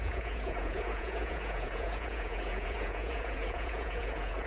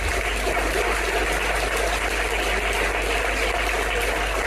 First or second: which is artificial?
first